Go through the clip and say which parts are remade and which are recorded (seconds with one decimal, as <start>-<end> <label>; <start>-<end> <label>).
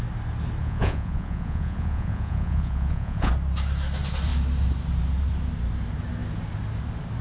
0.0-0.6 recorded; 0.6-3.3 remade; 3.3-7.2 recorded